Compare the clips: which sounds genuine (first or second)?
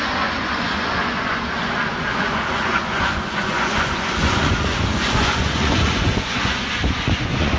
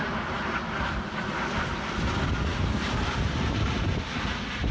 second